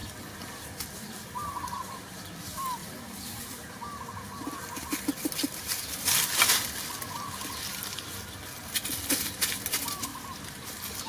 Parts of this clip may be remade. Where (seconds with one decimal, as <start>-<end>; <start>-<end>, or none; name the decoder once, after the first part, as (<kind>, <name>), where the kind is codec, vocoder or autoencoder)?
2.8-3.4 (vocoder, BigVGAN v2); 10.1-10.7